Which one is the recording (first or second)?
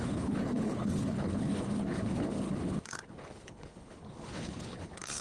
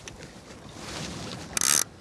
second